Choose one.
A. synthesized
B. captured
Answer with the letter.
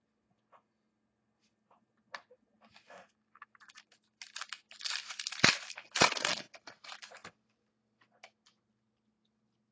B